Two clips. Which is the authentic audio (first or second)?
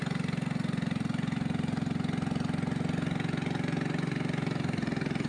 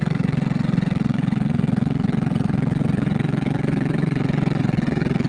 first